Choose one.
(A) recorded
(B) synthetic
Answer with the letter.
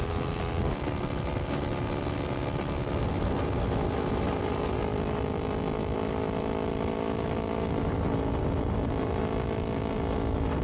A